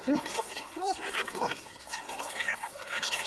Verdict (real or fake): fake